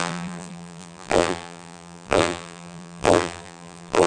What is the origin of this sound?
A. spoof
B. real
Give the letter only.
A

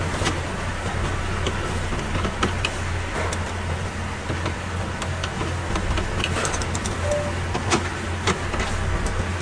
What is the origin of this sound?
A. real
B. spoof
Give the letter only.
A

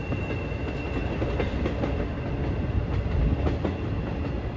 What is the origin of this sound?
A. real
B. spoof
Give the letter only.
A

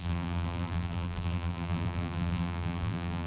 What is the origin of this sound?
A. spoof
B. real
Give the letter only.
A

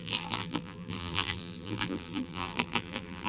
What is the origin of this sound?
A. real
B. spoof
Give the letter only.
B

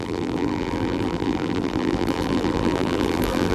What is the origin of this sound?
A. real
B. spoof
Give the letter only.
B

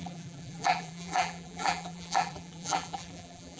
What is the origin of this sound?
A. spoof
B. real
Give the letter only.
A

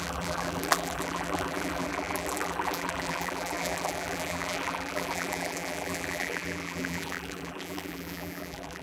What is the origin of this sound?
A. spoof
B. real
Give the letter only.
A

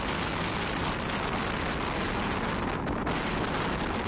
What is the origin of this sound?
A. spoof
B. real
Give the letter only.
B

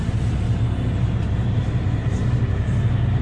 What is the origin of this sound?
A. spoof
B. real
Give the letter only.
B